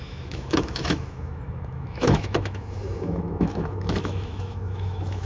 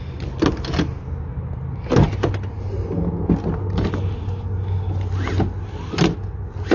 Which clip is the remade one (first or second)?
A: first